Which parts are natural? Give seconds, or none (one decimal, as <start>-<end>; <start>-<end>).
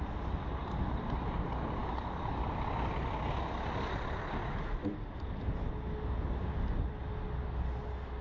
0.0-1.8; 3.3-8.2